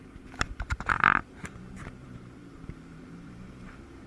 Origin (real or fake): fake